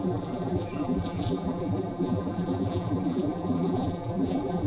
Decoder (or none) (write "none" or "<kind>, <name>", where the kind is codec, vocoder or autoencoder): vocoder, BigVGAN v2